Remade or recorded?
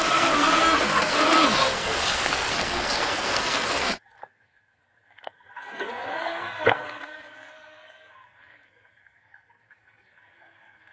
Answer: remade